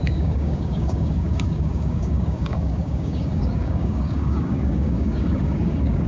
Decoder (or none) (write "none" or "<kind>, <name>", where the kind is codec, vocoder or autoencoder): codec, DAC